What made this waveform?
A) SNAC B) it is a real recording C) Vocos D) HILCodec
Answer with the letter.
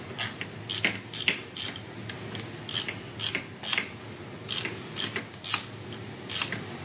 B